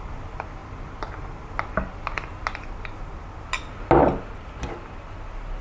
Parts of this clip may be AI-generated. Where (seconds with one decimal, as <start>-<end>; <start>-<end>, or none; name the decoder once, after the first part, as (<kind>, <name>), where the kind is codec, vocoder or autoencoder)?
none